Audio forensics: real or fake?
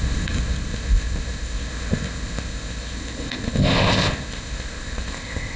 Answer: fake